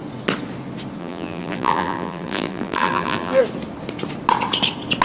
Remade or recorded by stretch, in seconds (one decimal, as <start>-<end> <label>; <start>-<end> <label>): 0.0-1.0 recorded; 1.0-3.4 remade; 3.4-5.0 recorded